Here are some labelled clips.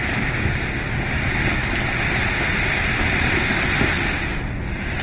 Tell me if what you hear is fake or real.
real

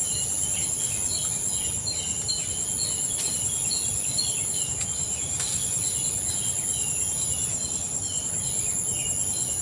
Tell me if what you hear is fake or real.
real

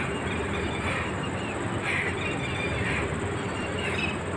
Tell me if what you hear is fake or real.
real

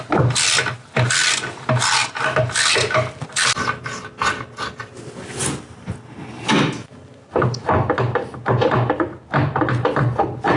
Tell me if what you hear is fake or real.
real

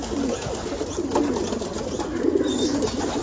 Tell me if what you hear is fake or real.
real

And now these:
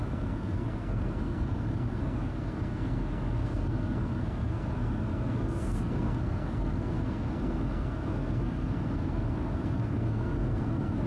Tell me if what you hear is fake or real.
fake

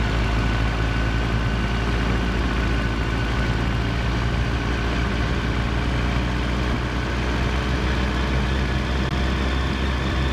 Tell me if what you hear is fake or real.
real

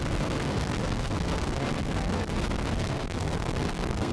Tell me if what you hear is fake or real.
fake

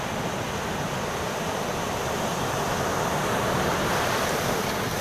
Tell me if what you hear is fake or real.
real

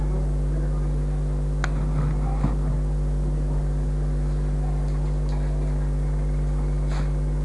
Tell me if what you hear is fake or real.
real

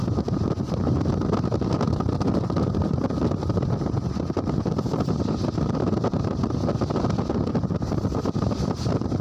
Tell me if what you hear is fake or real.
real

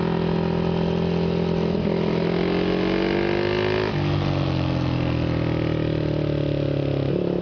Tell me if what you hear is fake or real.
real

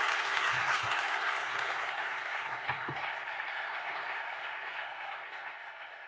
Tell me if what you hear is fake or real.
fake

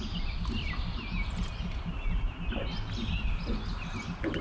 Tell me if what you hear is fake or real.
real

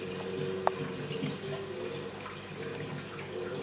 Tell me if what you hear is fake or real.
real